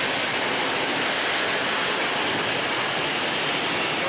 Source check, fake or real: real